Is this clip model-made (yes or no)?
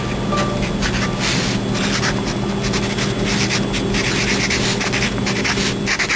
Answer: no